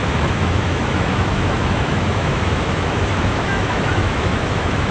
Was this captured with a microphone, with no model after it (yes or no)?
no